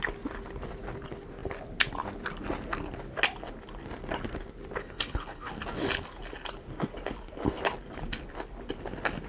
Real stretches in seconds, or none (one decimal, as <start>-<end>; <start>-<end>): 0.0-4.8; 5.5-9.3